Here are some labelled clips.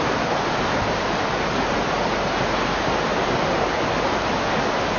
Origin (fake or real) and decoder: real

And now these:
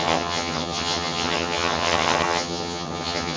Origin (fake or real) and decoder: fake, vocoder, HiFi-GAN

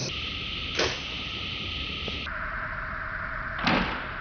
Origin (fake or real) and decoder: real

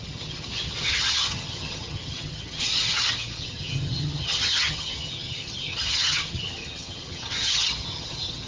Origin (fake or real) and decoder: fake, vocoder, HiFi-GAN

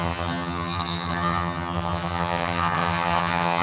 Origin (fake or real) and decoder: fake, vocoder, HiFi-GAN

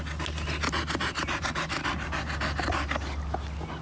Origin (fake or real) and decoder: real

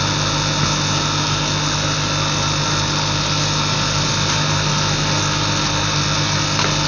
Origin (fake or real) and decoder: real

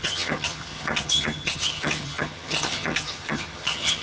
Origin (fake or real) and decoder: fake, vocoder, HiFi-GAN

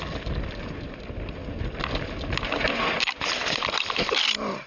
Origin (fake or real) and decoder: real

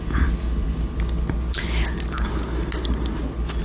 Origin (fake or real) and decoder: real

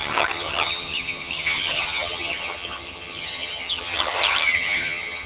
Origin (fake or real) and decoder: fake, vocoder, HiFi-GAN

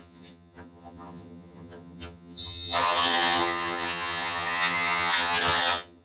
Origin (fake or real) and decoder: fake, vocoder, HiFi-GAN